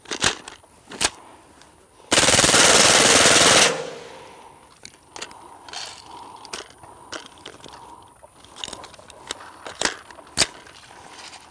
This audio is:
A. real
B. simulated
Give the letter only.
A